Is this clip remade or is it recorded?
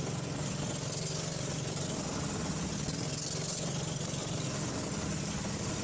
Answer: recorded